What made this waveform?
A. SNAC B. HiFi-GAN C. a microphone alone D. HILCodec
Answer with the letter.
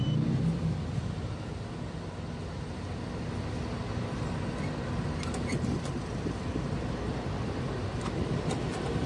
C